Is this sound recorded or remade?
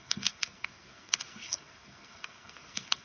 remade